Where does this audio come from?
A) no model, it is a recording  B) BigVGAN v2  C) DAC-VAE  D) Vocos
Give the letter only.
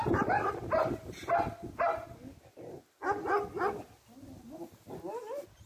A